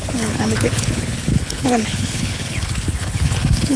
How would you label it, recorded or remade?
remade